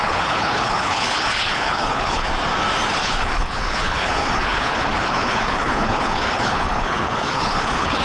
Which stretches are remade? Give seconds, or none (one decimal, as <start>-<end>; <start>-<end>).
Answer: 0.0-2.3; 2.9-8.0